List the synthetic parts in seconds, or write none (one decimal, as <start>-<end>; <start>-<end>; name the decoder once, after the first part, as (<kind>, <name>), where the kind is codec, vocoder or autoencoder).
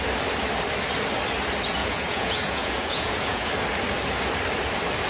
1.8-3.5 (vocoder, Vocos)